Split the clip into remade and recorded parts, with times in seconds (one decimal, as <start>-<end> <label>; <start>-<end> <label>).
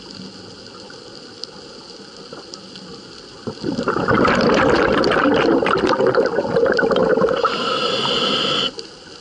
0.0-9.2 recorded